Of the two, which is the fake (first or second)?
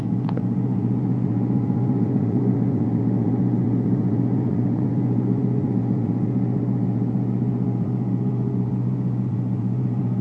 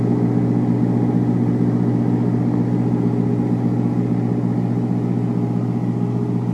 first